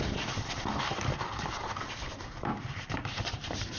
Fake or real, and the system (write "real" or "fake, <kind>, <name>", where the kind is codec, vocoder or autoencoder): fake, vocoder, BigVGAN v2